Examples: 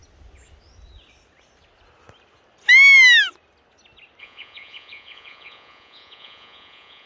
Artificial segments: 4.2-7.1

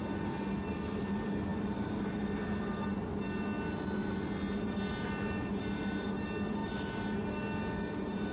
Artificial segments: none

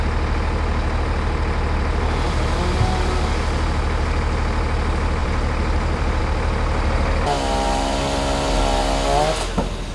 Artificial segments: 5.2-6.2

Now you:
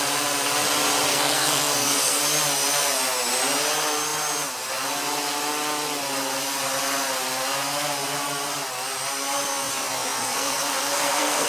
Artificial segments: 1.1-2.2; 10.2-11.5

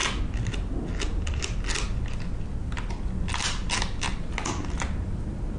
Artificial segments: none

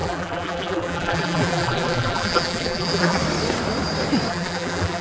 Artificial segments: 0.0-3.2; 4.3-5.0

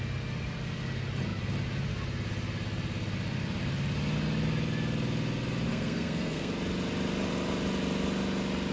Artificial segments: 5.7-6.5

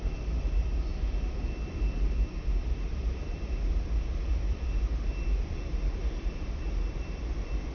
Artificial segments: 0.0-7.7